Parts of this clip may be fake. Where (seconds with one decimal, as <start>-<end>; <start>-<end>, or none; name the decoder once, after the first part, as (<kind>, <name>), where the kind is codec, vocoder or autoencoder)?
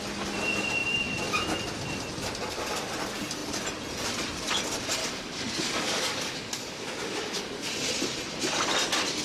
5.0-7.7 (codec, DAC)